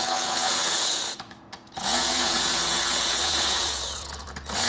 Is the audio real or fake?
fake